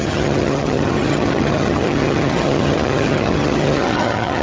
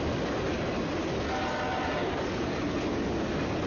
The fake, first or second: first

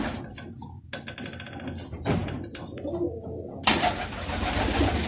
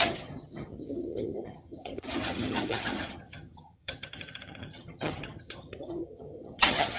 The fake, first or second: second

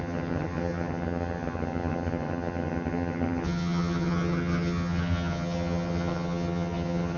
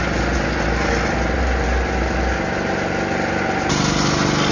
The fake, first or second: first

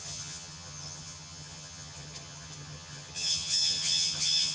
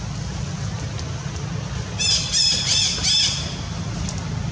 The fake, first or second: first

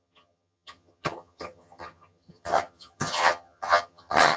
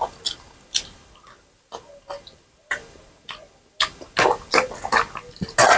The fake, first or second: first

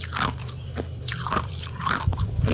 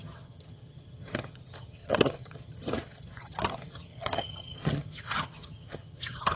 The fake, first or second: second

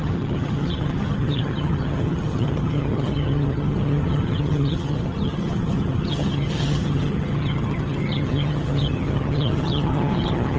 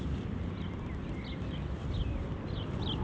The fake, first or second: first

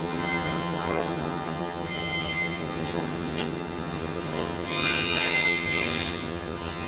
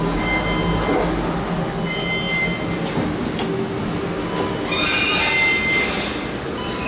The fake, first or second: first